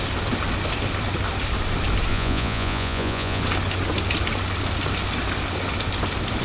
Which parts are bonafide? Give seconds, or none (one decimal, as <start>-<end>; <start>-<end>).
0.0-2.1; 3.4-6.4